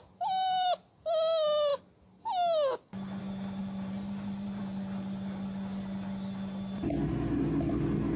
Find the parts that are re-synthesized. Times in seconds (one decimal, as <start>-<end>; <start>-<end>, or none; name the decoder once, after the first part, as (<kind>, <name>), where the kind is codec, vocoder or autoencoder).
3.6-4.6 (vocoder, BigVGAN v2)